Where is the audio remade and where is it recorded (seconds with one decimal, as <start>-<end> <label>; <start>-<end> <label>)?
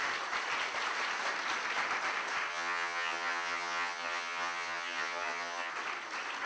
0.0-2.5 recorded; 2.5-5.7 remade; 5.7-6.5 recorded